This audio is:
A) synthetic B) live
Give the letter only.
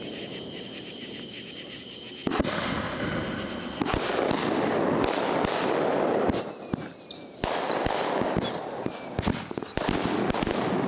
B